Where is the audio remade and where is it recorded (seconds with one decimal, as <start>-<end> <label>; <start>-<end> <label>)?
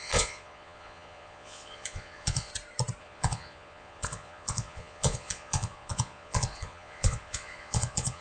0.0-2.5 remade; 2.5-3.0 recorded; 3.0-8.2 remade